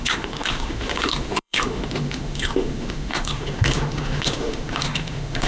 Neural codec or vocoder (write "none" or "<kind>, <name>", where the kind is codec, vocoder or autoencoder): autoencoder, DAC-VAE